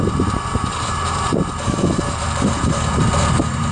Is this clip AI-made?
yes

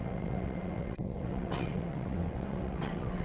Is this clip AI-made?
yes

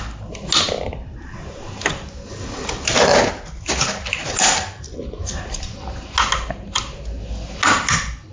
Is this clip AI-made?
no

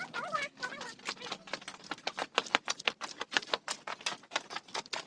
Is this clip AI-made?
no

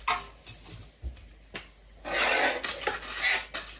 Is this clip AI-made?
no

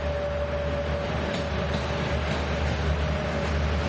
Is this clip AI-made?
no